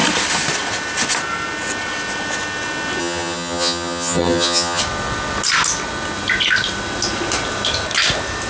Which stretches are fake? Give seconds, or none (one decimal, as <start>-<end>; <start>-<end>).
3.0-4.8